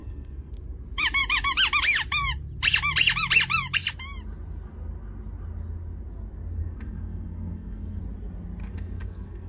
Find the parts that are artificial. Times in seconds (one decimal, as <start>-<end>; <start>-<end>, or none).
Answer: 0.0-0.5; 6.6-8.0; 8.6-9.5

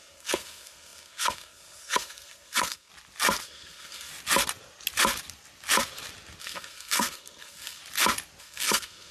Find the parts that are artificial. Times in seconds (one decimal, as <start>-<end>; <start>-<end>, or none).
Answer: 0.0-2.9; 3.4-4.1; 6.4-7.8; 8.4-9.1

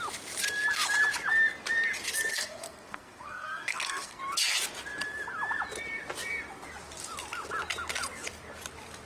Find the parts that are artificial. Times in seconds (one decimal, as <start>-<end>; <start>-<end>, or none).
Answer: 2.3-4.2